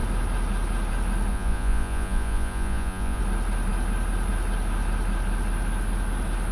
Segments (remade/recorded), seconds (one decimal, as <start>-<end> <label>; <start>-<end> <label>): 0.0-1.3 recorded; 1.3-3.2 remade; 3.2-6.5 recorded